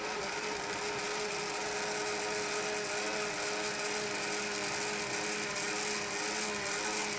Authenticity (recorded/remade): recorded